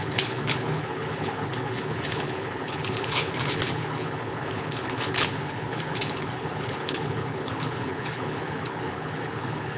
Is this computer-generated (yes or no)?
yes